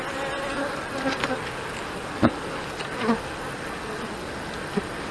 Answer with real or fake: real